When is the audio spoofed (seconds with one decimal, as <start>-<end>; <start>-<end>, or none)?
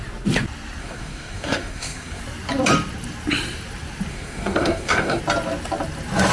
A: 0.8-2.2; 4.1-5.2